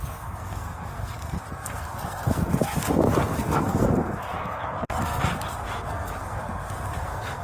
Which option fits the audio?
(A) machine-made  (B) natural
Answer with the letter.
A